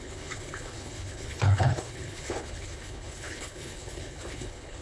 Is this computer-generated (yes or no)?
yes